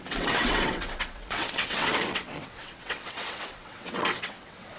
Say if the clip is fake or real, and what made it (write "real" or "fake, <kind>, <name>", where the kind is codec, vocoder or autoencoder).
fake, vocoder, WaveNeXt